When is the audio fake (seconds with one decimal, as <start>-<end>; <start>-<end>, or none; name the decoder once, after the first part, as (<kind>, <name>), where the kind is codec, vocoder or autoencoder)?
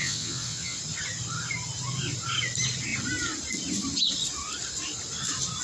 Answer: 0.0-0.8 (vocoder, WaveNeXt)